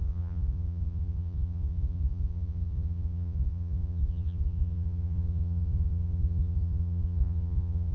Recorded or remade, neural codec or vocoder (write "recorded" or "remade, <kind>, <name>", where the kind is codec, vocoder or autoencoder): remade, vocoder, Vocos